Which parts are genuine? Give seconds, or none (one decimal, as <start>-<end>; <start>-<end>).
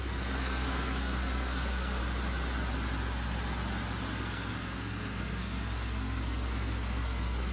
2.0-4.2